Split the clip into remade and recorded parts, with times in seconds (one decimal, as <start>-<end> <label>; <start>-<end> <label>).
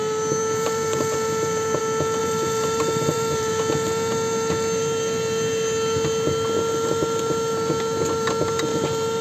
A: 0.0-0.4 recorded; 0.4-1.8 remade; 1.8-2.2 recorded; 2.2-3.5 remade; 3.5-8.7 recorded; 8.7-9.2 remade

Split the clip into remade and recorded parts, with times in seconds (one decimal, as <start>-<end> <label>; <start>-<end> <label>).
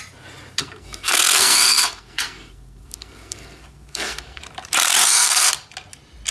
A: 0.0-0.6 recorded; 0.6-4.4 remade; 4.4-5.0 recorded; 5.0-5.5 remade; 5.5-6.3 recorded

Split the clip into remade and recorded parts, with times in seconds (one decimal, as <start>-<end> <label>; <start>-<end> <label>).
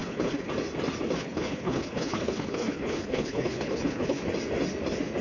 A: 0.0-0.5 remade; 0.5-1.2 recorded; 1.2-4.2 remade; 4.2-5.2 recorded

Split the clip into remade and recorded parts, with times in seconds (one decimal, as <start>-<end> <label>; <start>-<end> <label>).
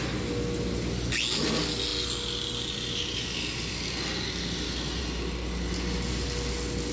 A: 0.0-6.9 recorded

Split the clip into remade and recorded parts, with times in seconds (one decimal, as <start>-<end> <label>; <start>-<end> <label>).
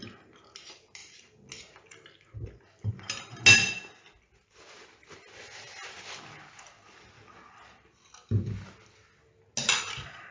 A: 0.0-10.3 recorded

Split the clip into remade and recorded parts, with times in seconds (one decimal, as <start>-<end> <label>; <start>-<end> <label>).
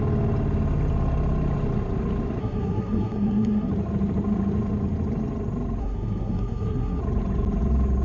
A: 0.0-2.4 recorded; 2.4-3.7 remade; 3.7-5.8 recorded; 5.8-7.0 remade; 7.0-8.0 recorded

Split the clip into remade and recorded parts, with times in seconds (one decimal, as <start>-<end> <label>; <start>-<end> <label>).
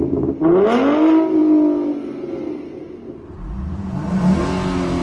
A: 0.0-5.0 recorded